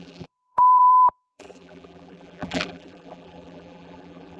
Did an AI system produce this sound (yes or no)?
yes